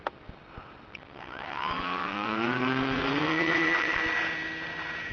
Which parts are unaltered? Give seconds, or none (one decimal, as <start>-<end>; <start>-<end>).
0.0-0.9; 4.0-5.1